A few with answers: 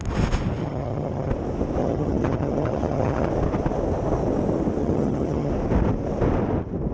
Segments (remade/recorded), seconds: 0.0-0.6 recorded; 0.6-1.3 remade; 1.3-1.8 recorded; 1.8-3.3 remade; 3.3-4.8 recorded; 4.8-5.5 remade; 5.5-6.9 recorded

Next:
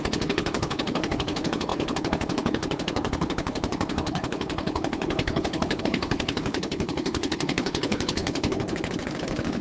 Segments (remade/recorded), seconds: 0.0-9.6 remade

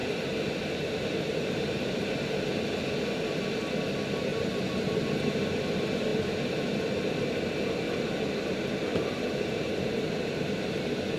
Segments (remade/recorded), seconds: 0.0-2.4 remade; 2.4-4.3 recorded; 4.3-5.0 remade; 5.0-8.9 recorded; 8.9-9.9 remade; 9.9-11.2 recorded

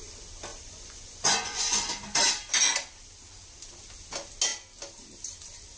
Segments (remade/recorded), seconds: 0.0-0.5 recorded; 0.5-1.8 remade; 1.8-5.8 recorded